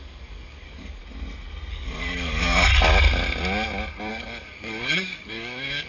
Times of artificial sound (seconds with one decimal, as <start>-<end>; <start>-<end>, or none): 0.0-1.0; 1.7-2.7; 4.1-5.9